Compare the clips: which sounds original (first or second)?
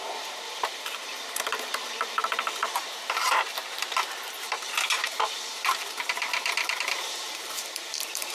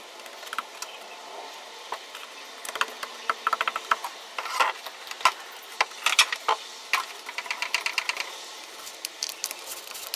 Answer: second